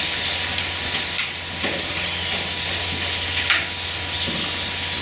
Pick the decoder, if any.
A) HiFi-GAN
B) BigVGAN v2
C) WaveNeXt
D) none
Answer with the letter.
D